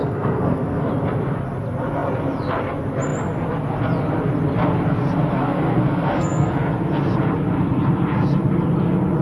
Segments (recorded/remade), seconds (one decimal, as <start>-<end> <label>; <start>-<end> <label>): 0.0-0.9 remade; 0.9-5.3 recorded; 5.3-6.5 remade; 6.5-9.2 recorded